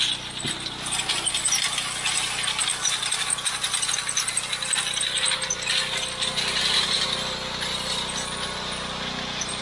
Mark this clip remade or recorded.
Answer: recorded